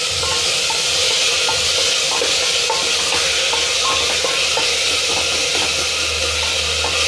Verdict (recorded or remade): recorded